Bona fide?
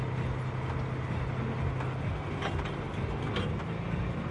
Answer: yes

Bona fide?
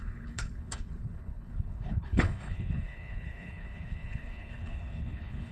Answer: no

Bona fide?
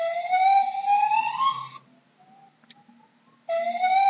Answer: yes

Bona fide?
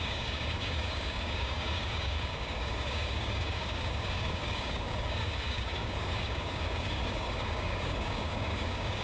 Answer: no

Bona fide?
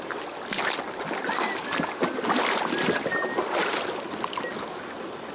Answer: yes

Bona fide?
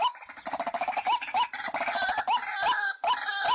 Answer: yes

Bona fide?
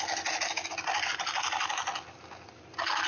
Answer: yes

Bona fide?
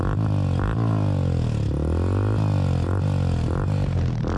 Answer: yes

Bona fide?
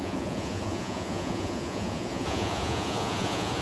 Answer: no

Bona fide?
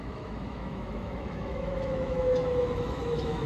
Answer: no